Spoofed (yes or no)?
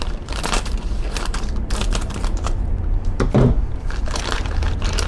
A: yes